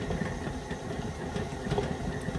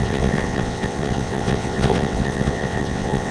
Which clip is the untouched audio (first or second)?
first